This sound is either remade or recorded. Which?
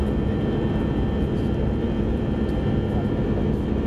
recorded